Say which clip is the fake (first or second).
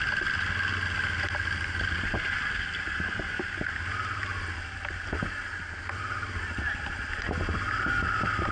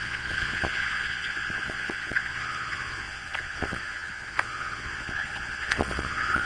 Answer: second